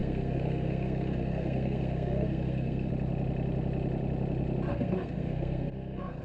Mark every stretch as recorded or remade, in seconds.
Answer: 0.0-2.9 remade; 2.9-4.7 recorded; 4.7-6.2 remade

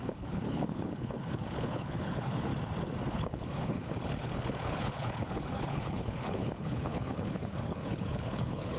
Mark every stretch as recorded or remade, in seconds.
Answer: 0.0-2.5 remade; 2.5-3.1 recorded; 3.1-8.8 remade

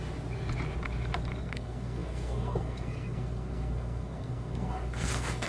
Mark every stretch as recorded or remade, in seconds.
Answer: 0.0-1.4 recorded; 1.4-5.5 remade

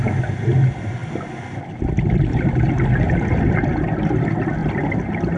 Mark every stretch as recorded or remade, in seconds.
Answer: 0.0-5.4 recorded

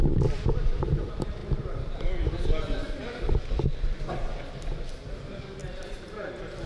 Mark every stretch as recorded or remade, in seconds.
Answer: 0.0-5.6 recorded; 5.6-6.7 remade

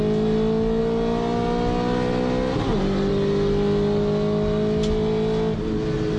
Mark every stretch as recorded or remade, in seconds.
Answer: 0.0-6.2 recorded

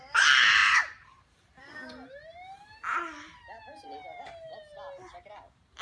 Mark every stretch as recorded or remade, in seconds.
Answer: 0.0-5.8 recorded